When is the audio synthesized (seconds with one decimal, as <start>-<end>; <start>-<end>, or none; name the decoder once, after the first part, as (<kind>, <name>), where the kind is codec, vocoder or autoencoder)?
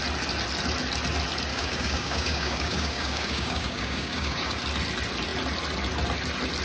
1.5-4.6 (codec, DAC)